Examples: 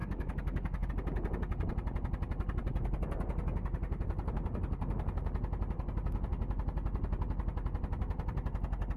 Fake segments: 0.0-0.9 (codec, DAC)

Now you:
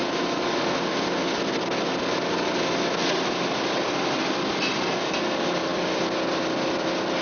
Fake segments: none

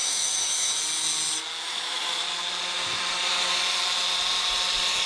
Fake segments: 0.0-0.8 (autoencoder, DAC-VAE); 1.6-2.2

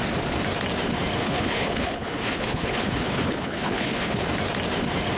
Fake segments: 1.2-4.3 (codec, HILCodec)